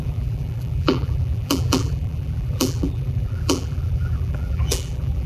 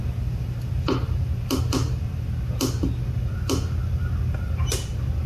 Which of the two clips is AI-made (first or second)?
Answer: first